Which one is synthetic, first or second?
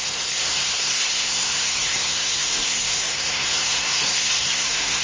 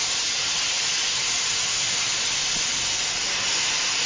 first